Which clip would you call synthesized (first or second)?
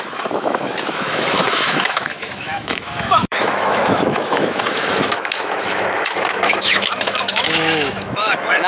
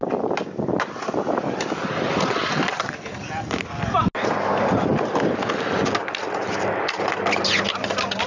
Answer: first